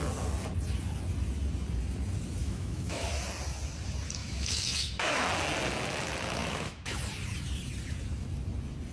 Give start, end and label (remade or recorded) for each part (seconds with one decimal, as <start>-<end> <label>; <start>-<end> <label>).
0.0-2.4 recorded; 2.4-3.1 remade; 3.1-4.2 recorded; 4.2-5.2 remade; 5.2-6.4 recorded; 6.4-7.0 remade; 7.0-8.9 recorded